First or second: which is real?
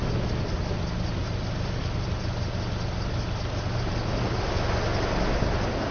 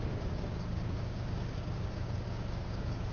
first